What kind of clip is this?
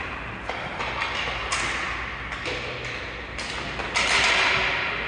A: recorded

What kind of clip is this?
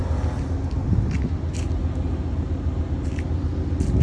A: recorded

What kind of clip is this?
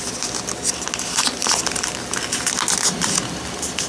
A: recorded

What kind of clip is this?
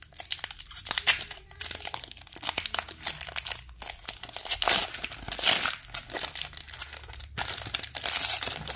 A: recorded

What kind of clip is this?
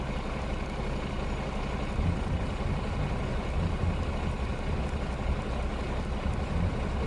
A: recorded